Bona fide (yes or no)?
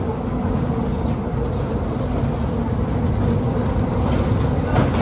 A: yes